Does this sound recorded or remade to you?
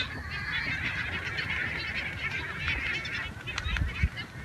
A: recorded